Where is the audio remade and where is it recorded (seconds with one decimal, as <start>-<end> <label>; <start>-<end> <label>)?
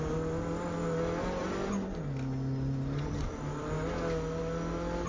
0.0-5.1 recorded